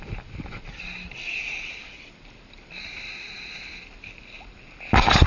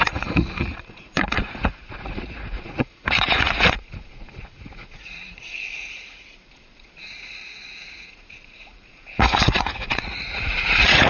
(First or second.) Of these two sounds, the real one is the first